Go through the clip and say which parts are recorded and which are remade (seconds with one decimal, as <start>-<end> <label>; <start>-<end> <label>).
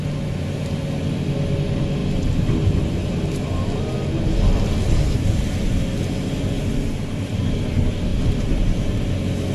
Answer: 0.0-8.1 recorded; 8.1-9.1 remade; 9.1-9.5 recorded